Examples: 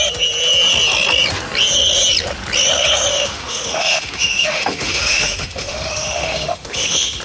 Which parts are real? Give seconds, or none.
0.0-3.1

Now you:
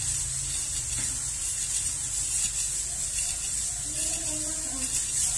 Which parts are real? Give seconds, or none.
0.0-5.4

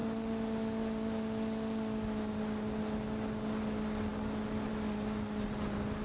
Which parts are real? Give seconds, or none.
0.0-6.0

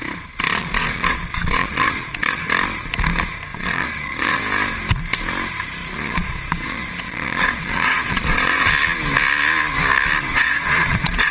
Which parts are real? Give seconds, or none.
0.0-0.6; 2.4-3.5; 4.4-5.8; 8.7-10.3

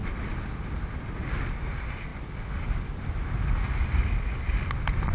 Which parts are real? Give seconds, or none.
0.0-5.1

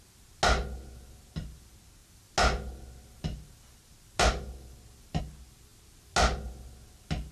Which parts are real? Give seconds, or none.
0.0-7.3